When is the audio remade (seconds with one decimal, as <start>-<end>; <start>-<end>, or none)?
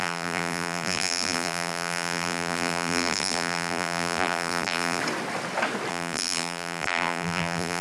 0.0-5.0; 5.9-7.8